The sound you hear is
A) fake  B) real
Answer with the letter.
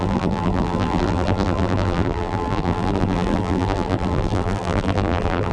A